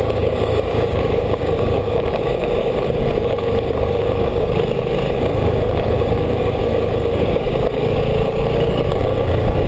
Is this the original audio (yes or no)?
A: no